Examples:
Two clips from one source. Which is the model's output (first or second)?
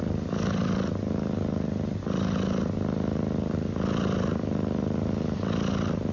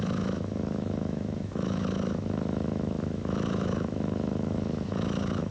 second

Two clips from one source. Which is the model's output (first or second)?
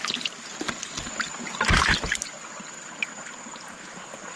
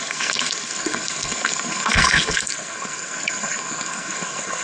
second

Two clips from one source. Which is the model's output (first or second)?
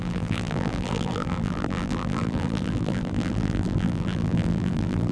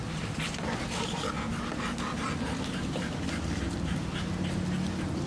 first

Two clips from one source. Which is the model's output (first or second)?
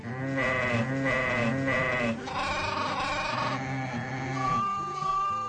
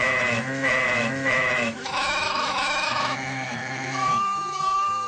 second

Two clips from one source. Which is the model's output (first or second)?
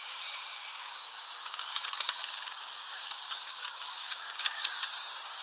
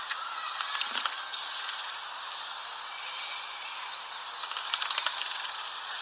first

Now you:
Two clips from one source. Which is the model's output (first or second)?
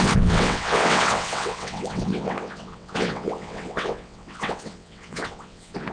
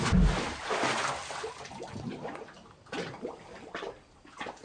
first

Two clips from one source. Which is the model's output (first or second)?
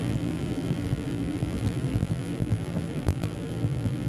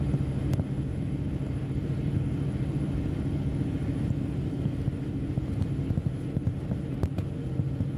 first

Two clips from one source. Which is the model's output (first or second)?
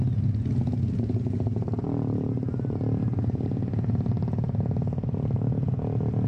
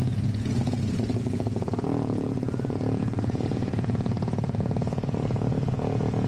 second